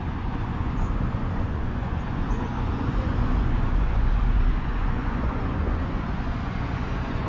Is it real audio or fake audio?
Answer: fake